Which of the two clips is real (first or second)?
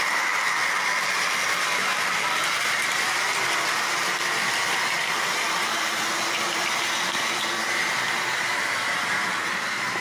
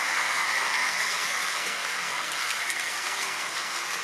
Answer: first